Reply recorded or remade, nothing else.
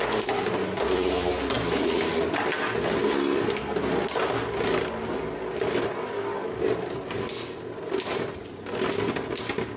recorded